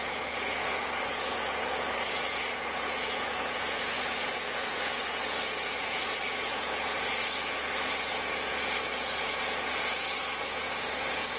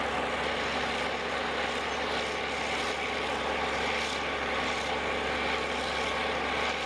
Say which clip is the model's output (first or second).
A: first